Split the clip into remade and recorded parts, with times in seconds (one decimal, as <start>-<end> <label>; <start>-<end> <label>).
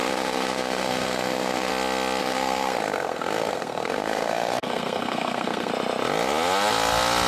0.0-1.7 remade; 1.7-2.2 recorded; 2.2-5.7 remade; 5.7-7.3 recorded